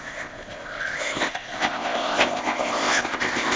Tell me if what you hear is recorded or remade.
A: remade